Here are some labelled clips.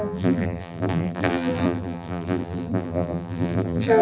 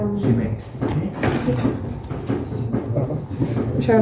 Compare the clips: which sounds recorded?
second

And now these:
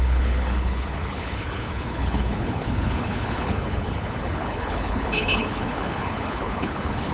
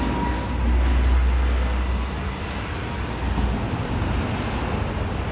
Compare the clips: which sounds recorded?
second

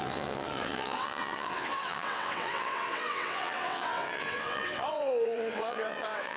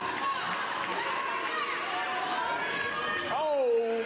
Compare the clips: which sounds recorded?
second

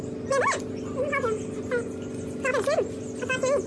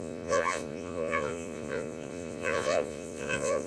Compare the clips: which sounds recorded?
first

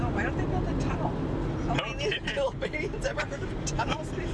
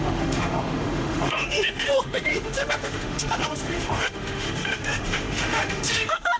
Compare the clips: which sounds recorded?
first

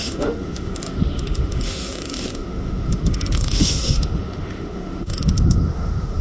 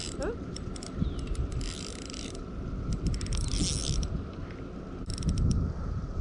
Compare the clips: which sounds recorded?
second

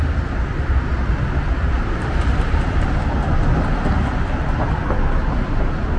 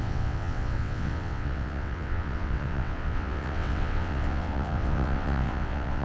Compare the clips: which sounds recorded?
first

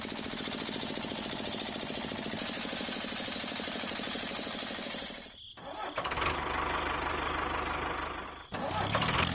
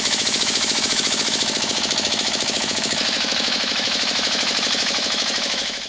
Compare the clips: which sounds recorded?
first